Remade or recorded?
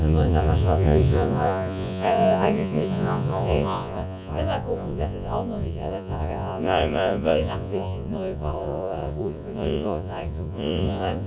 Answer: remade